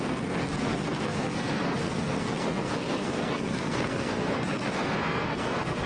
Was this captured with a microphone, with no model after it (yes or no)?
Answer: no